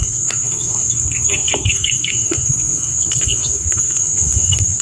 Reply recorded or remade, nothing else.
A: remade